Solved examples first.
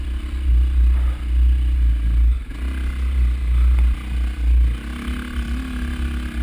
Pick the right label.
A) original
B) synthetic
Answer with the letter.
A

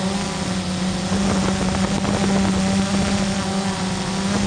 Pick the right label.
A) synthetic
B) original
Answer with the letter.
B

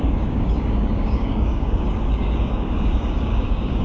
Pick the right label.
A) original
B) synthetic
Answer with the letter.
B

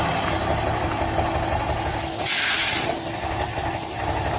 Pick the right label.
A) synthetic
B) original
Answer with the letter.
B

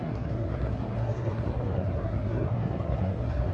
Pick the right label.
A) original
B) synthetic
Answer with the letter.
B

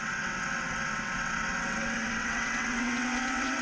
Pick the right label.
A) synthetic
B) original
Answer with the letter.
A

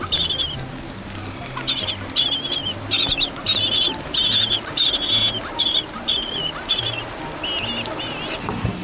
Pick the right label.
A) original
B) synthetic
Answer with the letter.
A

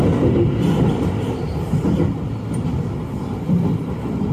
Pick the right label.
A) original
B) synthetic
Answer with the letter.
A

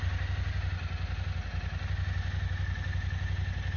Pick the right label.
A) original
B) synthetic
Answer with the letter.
A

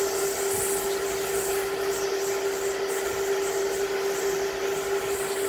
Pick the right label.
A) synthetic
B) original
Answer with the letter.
B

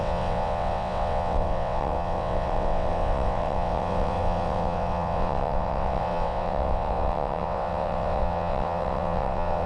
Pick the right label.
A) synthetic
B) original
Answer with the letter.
A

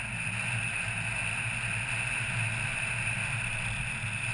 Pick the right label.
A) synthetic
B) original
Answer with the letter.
B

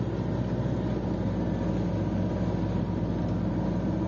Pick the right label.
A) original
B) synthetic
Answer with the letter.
A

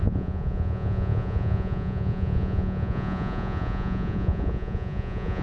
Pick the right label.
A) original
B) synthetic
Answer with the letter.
B